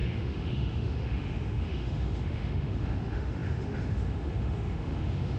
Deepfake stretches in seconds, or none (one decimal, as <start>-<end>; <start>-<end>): 0.0-5.4